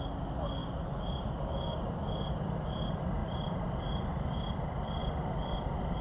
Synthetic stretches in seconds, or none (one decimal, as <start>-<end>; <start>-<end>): 3.2-3.8